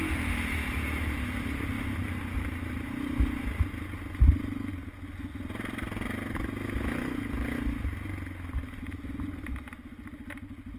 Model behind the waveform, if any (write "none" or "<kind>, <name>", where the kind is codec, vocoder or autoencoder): none